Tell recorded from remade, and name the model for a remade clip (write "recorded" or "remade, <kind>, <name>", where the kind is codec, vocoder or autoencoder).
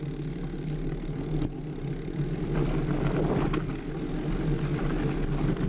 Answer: recorded